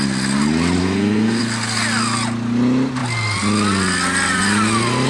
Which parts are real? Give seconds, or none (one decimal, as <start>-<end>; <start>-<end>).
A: 0.0-0.8; 1.4-5.1